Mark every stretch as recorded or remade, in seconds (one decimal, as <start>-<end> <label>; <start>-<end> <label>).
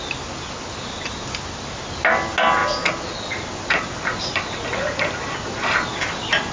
0.0-6.5 recorded